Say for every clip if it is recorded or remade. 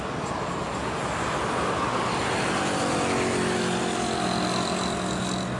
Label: recorded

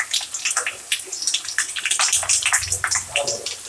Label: recorded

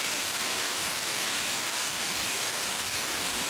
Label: remade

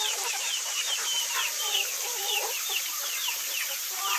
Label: remade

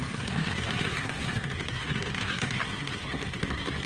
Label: remade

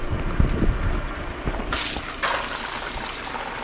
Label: recorded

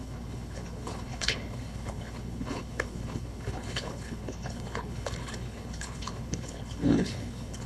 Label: remade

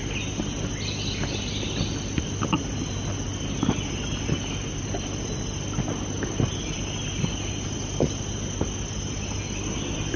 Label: recorded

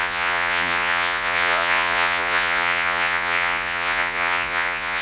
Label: remade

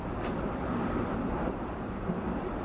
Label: remade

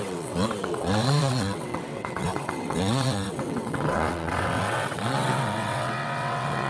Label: remade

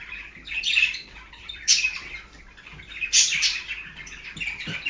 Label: remade